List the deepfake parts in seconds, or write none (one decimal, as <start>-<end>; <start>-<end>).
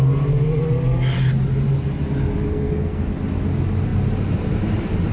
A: 2.5-3.0